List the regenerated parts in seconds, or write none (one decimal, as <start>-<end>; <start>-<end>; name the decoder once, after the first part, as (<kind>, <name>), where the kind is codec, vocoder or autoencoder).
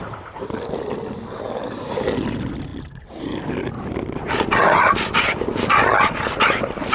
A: none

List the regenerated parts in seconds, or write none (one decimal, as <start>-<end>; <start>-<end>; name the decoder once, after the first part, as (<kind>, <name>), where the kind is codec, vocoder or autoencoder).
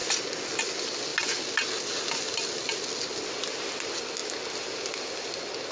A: none